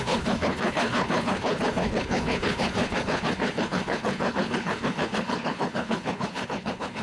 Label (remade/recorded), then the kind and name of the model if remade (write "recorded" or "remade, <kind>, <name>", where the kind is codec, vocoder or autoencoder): remade, codec, HILCodec